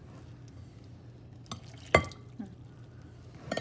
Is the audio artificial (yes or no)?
no